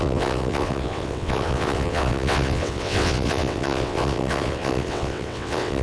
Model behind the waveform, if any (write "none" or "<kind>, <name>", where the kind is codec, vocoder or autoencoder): vocoder, WaveNeXt